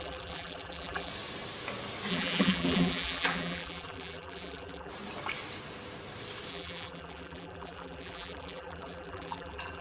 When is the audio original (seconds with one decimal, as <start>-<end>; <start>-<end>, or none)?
1.1-2.1; 4.9-6.5